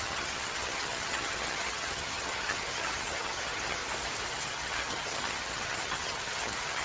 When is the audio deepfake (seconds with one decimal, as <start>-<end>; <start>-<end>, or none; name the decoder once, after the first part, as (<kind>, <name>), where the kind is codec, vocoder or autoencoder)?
0.0-3.8 (vocoder, HiFi-GAN); 4.3-6.8